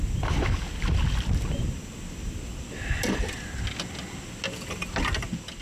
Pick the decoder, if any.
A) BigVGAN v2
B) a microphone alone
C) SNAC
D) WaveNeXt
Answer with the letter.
B